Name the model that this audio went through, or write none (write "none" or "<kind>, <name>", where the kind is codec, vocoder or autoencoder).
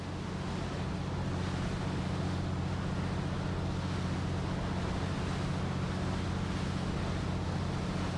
none